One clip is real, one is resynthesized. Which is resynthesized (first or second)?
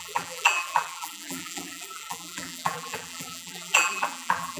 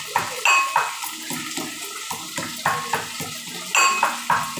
first